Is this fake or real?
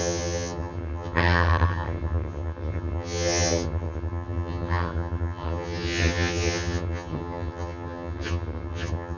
fake